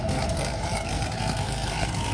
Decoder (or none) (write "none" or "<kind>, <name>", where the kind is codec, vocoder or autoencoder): codec, SNAC